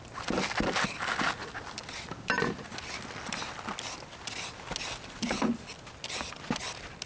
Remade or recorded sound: recorded